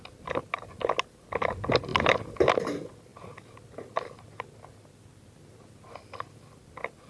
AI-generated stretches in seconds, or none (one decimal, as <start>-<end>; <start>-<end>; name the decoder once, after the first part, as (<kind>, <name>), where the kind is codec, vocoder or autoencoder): none